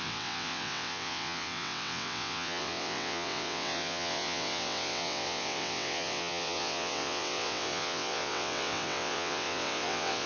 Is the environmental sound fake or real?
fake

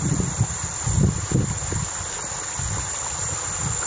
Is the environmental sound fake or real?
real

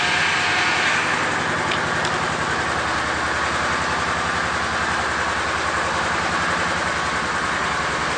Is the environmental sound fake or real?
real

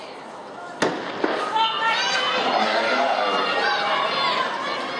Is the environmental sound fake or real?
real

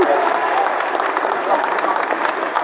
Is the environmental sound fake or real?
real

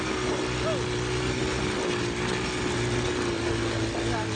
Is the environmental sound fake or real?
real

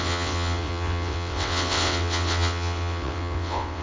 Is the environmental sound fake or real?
fake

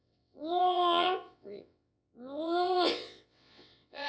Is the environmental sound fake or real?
fake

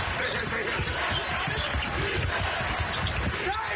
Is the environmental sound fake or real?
real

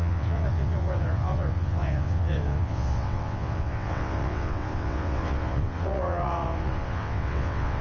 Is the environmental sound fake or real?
fake